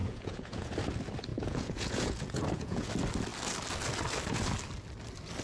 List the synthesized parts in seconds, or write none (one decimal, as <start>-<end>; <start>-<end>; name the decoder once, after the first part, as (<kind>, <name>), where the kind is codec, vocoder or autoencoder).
0.0-0.7 (vocoder, Vocos); 1.3-2.9